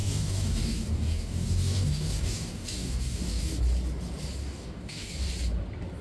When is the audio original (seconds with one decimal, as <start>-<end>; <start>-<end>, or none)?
3.6-4.4; 5.3-6.0